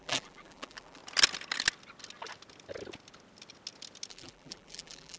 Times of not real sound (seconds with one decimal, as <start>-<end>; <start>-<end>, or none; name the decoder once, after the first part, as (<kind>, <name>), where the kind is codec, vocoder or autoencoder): 0.0-1.0 (vocoder, BigVGAN v2); 4.1-5.2